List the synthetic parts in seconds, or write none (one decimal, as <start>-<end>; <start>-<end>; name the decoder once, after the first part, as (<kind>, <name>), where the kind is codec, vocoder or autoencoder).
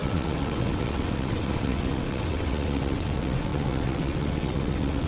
0.0-5.1 (vocoder, WaveNeXt)